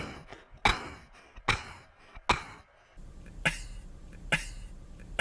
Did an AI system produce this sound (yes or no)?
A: no